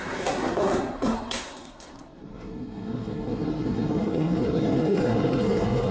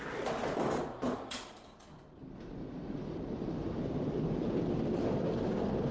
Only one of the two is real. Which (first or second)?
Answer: second